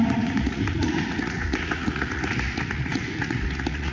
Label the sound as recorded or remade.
remade